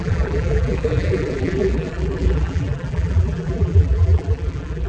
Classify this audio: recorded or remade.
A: remade